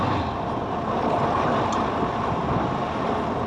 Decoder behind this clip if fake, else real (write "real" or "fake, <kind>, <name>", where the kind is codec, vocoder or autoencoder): real